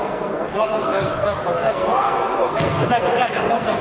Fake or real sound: fake